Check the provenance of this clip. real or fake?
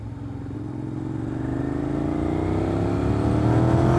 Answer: real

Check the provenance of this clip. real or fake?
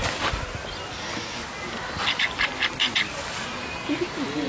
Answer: real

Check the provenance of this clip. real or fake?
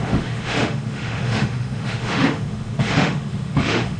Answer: fake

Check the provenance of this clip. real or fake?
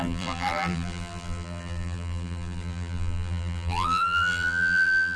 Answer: fake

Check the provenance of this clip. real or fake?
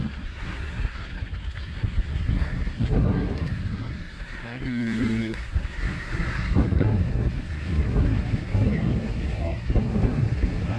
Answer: fake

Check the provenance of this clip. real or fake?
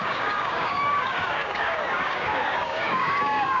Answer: fake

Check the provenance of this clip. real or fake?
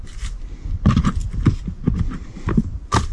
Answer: real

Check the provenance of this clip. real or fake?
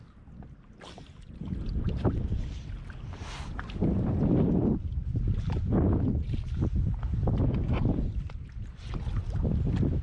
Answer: real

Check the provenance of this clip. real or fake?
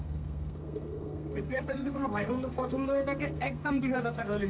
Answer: fake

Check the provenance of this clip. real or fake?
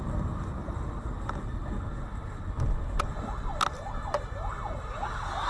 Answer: real